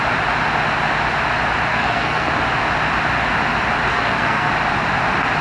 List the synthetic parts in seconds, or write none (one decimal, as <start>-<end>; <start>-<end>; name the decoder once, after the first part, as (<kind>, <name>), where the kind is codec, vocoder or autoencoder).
1.7-2.3 (codec, SNAC); 3.9-4.5